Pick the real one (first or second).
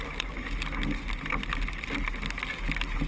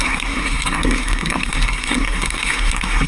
first